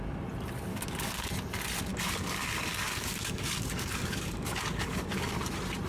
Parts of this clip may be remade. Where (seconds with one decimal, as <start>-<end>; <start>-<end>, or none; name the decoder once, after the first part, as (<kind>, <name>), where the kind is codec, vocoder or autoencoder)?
0.7-1.3 (codec, DAC); 1.9-5.4